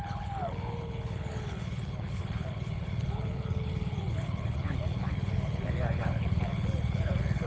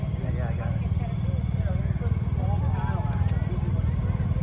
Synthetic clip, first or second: first